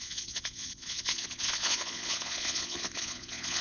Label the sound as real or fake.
fake